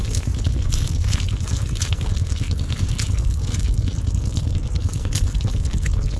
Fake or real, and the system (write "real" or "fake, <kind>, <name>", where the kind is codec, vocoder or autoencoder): fake, codec, SNAC